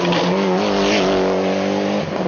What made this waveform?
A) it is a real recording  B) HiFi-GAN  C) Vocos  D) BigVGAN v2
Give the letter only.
A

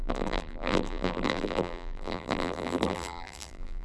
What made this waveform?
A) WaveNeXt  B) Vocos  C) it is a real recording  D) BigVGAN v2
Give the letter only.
D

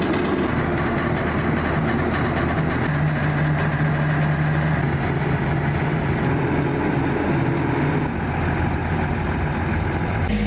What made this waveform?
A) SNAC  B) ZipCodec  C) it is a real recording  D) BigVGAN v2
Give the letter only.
C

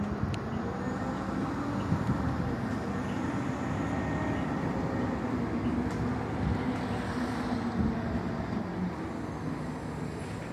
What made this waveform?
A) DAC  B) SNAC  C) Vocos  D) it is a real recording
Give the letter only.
D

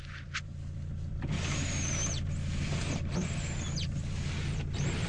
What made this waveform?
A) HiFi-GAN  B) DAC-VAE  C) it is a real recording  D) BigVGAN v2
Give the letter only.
D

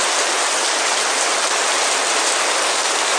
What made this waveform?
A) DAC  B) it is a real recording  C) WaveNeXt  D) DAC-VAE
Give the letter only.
B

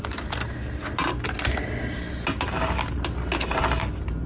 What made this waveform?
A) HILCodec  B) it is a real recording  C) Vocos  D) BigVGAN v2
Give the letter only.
B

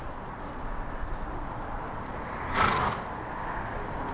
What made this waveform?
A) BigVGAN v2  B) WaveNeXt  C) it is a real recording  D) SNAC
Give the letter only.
C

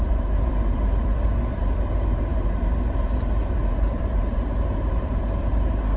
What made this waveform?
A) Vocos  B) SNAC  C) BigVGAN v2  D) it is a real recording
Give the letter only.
C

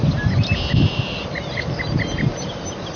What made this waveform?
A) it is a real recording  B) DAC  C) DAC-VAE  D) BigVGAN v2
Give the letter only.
A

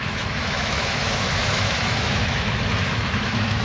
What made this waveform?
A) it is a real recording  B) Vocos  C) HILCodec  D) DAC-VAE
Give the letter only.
D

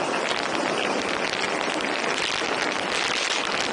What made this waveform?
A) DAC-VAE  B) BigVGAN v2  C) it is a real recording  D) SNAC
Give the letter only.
C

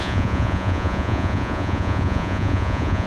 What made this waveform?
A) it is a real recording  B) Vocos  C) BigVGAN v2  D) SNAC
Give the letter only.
B